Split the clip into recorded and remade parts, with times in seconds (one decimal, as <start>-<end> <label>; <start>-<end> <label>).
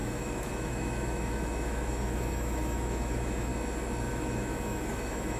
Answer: 0.0-3.5 remade; 3.5-4.0 recorded; 4.0-5.4 remade